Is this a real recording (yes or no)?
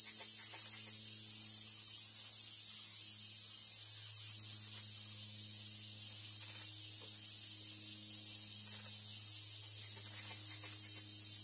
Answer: yes